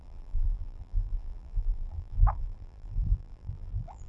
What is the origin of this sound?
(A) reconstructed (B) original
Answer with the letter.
A